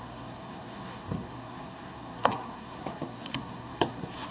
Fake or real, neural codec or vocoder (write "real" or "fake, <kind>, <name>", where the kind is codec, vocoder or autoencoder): fake, codec, SNAC